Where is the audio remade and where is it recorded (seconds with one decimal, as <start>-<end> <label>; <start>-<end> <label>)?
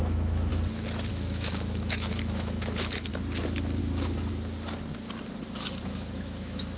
0.0-0.5 remade; 0.5-1.1 recorded; 1.1-3.1 remade; 3.1-3.8 recorded; 3.8-4.3 remade; 4.3-5.8 recorded; 5.8-6.8 remade